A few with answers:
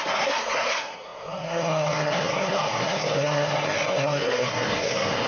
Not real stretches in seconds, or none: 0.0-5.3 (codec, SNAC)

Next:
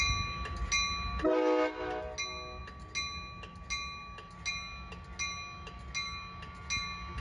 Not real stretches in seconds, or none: none

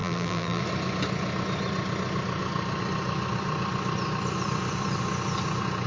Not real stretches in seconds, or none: 0.0-0.6 (vocoder, BigVGAN v2)

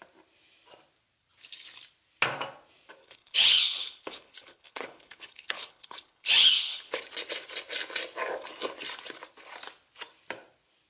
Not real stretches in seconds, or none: 3.0-7.0 (codec, HILCodec)

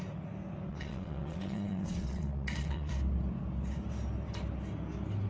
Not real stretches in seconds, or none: 0.7-2.9 (vocoder, WaveNeXt)

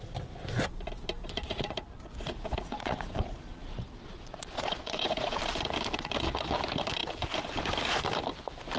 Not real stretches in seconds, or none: 1.2-5.4 (vocoder, Vocos)